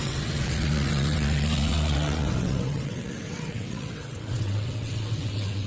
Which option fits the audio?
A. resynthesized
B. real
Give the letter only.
A